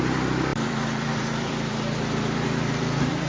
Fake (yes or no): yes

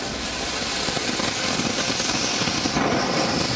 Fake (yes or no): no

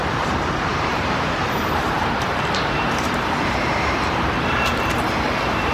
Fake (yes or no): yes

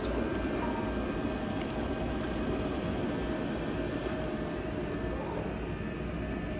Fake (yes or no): no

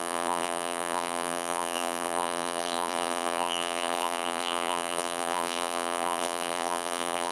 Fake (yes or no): yes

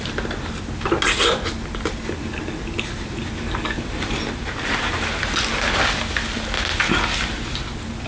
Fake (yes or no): no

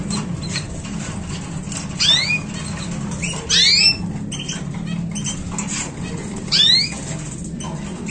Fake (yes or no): no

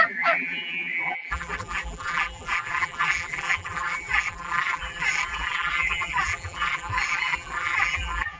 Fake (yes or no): yes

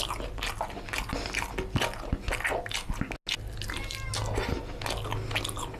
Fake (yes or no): no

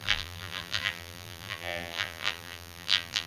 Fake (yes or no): yes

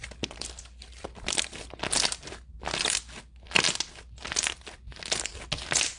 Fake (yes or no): no